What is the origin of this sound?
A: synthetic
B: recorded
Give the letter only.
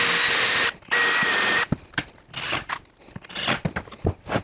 B